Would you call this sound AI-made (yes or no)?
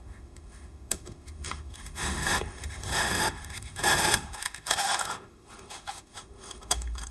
yes